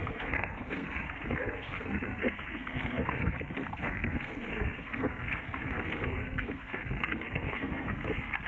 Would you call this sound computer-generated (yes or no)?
yes